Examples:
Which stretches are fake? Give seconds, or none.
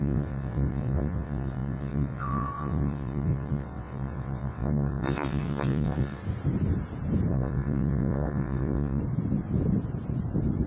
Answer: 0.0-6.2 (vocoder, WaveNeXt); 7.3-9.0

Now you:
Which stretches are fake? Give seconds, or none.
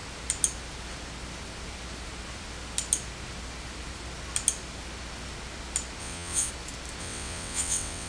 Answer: 6.0-6.5 (vocoder, WaveNeXt); 7.0-8.1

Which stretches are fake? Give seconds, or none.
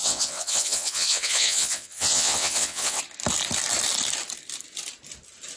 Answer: 0.0-3.0 (vocoder, WaveNeXt)